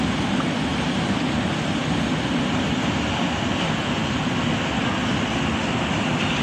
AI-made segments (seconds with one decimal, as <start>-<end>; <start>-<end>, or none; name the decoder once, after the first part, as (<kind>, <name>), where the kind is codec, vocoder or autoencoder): none